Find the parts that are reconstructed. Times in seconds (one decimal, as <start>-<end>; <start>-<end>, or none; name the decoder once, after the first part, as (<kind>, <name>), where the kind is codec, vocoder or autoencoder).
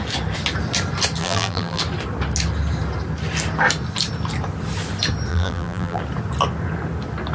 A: 1.2-1.8 (vocoder, BigVGAN v2); 5.3-6.0